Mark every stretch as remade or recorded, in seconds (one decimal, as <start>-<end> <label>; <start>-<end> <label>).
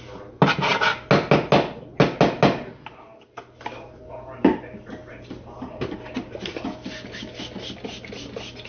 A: 0.0-8.7 recorded